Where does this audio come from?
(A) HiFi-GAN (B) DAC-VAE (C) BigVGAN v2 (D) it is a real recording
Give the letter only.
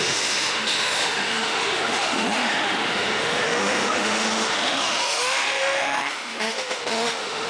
B